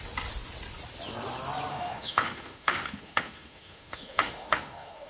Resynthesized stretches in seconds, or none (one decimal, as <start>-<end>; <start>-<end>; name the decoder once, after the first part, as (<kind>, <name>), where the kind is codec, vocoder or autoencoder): 1.7-5.1 (autoencoder, DAC-VAE)